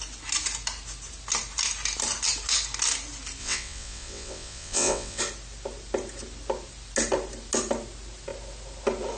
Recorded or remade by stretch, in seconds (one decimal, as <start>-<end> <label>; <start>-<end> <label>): 0.0-3.4 recorded; 3.4-5.2 remade; 5.2-9.2 recorded